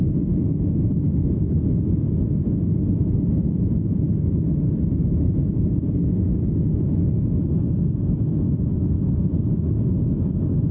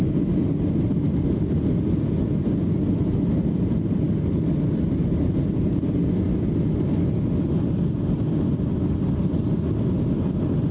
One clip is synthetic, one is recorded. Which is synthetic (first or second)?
first